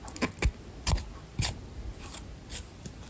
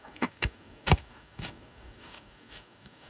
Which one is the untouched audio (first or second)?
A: first